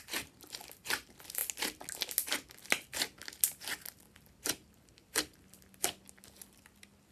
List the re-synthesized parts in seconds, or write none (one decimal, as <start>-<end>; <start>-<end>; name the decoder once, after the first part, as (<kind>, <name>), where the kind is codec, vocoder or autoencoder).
none